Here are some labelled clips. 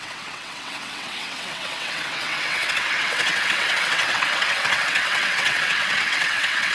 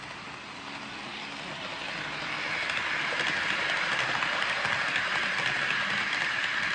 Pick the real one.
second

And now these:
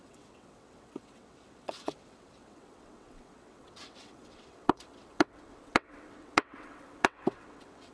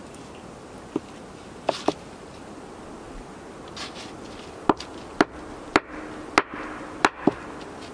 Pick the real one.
second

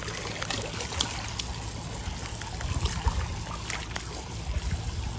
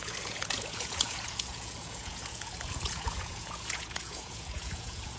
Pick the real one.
first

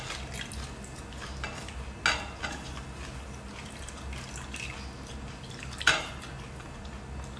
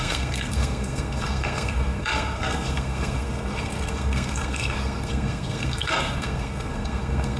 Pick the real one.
first